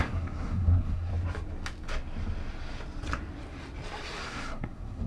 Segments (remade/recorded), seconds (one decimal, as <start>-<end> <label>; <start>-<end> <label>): 0.0-1.1 remade; 1.1-4.2 recorded; 4.2-5.1 remade